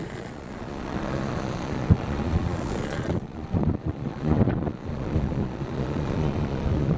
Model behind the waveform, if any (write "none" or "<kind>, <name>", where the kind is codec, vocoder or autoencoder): vocoder, Vocos